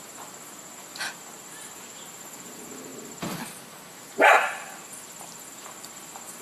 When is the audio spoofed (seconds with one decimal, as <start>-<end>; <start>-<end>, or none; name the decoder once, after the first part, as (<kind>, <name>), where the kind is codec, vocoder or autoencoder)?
0.0-2.9 (vocoder, BigVGAN v2); 5.5-6.4